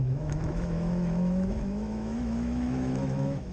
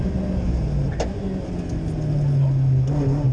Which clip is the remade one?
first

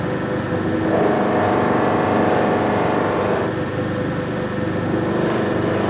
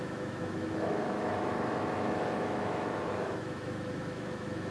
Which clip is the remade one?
second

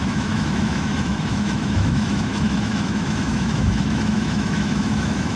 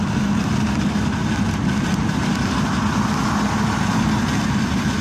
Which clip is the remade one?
first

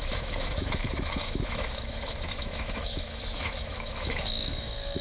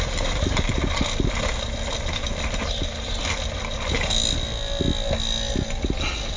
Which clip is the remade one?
first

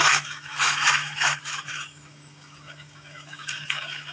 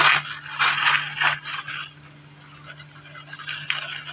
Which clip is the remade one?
first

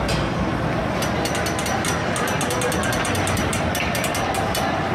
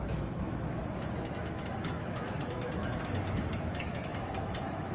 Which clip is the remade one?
second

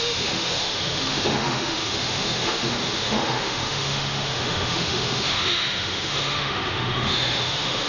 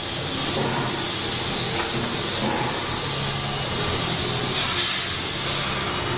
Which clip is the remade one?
first